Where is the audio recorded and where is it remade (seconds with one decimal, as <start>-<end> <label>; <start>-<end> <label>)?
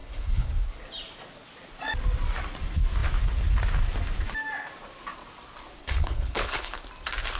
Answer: 0.0-0.5 remade; 0.5-5.8 recorded; 5.8-6.8 remade; 6.8-7.4 recorded